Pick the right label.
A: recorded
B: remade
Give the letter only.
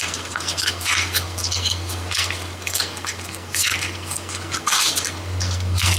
B